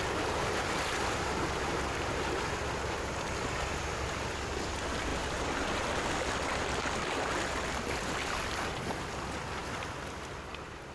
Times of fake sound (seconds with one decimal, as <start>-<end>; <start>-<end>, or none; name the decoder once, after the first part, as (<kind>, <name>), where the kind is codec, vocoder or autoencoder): none